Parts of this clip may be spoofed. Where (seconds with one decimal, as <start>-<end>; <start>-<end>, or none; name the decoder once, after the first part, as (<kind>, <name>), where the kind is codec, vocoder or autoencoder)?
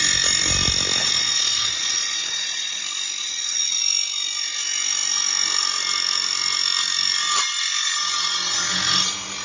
1.0-2.8 (vocoder, Vocos); 3.2-3.8